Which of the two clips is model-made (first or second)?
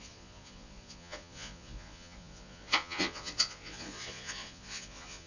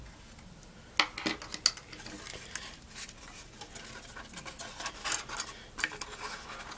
first